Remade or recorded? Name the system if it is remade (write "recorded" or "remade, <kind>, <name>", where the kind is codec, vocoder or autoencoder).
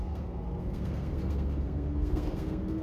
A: remade, codec, SNAC